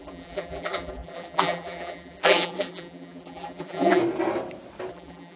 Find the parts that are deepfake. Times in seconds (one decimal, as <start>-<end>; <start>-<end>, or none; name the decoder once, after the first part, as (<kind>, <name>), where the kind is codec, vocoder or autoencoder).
0.0-4.0 (vocoder, BigVGAN v2); 4.9-5.4